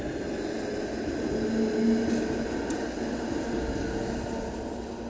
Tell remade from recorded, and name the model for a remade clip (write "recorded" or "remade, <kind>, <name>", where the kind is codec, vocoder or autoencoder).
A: recorded